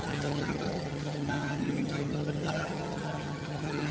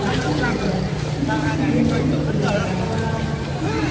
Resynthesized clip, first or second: first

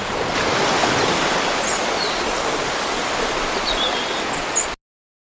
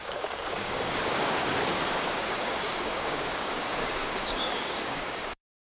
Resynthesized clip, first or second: second